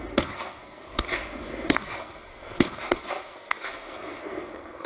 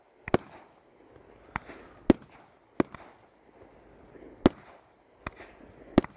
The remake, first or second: first